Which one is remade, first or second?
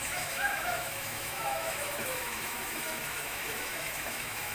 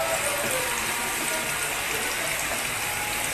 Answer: first